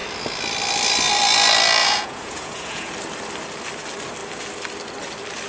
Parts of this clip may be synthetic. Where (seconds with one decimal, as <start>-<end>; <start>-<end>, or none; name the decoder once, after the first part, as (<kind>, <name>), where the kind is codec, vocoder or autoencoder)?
1.8-2.9 (vocoder, Vocos)

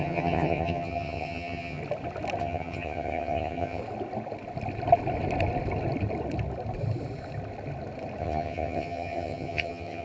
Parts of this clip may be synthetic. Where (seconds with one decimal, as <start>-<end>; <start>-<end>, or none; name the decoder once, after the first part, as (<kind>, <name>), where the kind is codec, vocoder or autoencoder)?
0.0-1.8 (vocoder, HiFi-GAN); 2.4-3.8; 8.2-10.0

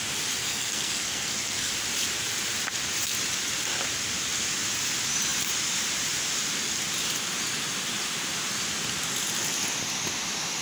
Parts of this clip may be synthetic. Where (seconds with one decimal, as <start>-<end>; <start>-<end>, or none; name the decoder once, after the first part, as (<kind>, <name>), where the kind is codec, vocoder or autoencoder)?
0.4-1.7 (codec, SNAC)